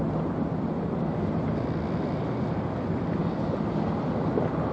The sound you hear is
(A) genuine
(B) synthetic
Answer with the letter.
A